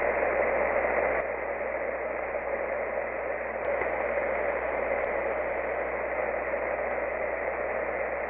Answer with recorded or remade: recorded